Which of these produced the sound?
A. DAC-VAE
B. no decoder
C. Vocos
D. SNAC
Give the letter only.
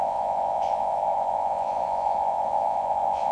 C